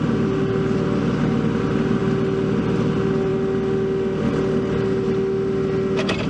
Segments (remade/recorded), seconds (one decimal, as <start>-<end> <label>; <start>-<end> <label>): 0.0-6.3 recorded